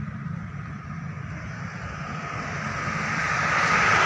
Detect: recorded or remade recorded